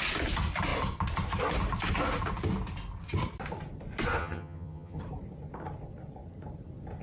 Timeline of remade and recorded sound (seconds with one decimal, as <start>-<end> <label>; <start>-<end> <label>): 0.0-4.2 recorded; 4.2-5.0 remade; 5.0-7.0 recorded